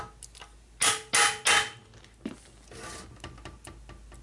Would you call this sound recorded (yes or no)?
yes